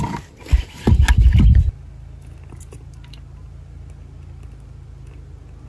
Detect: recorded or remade recorded